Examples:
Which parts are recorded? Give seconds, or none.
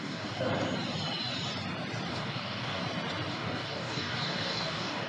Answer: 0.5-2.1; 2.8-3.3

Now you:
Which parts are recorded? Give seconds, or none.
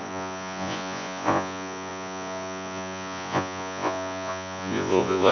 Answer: none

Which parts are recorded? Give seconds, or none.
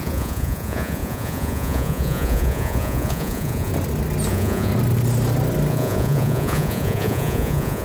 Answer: 3.7-4.3; 4.7-5.7